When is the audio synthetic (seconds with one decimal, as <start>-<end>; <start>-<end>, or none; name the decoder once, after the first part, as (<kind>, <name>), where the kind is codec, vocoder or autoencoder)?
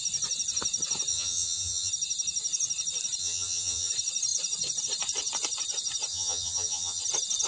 1.1-1.9 (vocoder, HiFi-GAN); 3.2-3.9; 6.1-7.0